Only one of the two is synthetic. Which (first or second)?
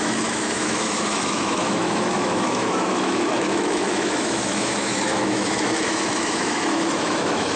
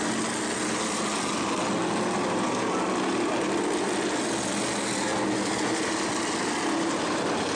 first